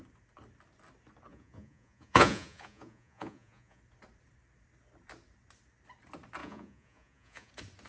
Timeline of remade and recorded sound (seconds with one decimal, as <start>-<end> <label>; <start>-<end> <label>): 0.0-1.3 recorded; 1.3-3.8 remade; 3.8-6.4 recorded; 6.4-7.5 remade; 7.5-7.9 recorded